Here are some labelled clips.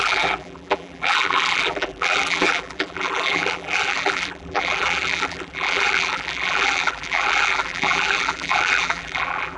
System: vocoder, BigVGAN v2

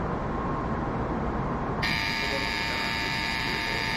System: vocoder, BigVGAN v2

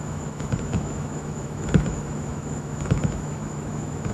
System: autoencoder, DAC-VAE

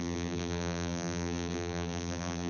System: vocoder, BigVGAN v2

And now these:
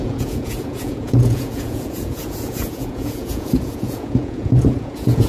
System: vocoder, Vocos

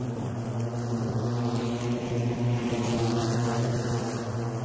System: none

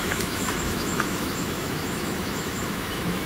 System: autoencoder, DAC-VAE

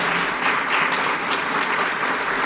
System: none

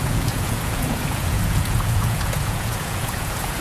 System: vocoder, Vocos